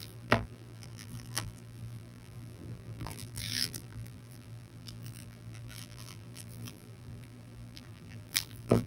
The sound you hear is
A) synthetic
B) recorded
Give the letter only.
A